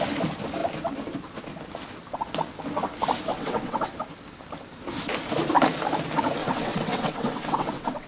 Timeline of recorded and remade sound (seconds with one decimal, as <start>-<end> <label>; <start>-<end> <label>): 0.0-3.3 recorded; 3.3-3.9 remade; 3.9-6.4 recorded; 6.4-8.1 remade